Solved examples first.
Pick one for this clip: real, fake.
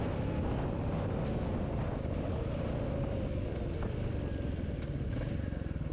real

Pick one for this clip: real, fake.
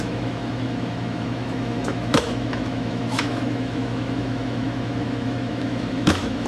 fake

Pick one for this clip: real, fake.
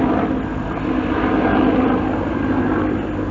real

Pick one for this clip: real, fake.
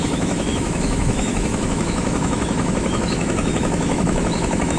fake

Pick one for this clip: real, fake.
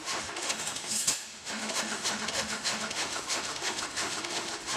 fake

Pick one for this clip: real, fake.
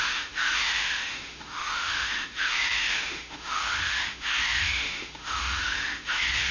fake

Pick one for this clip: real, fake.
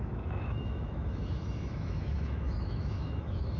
fake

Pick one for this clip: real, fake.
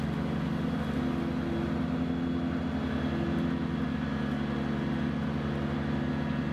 real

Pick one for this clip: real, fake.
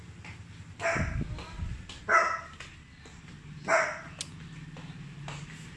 real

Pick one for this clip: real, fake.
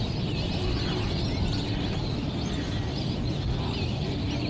real